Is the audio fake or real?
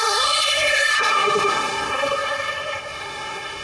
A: fake